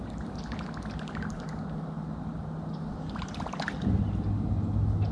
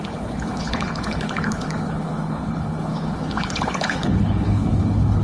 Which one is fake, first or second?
second